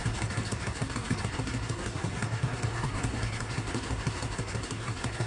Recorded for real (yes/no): no